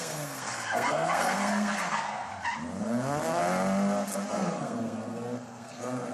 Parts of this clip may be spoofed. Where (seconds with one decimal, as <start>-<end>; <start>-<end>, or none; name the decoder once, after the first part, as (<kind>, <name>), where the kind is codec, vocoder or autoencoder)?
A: 0.0-2.3 (codec, SNAC); 2.8-3.4; 4.3-6.1